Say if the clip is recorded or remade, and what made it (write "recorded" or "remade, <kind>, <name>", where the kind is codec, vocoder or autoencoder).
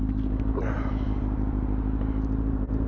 recorded